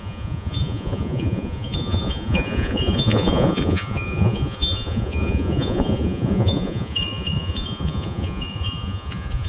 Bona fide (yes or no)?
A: no